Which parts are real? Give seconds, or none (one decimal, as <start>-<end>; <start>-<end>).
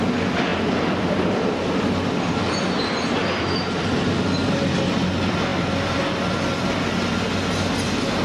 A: 0.0-0.5; 4.8-8.2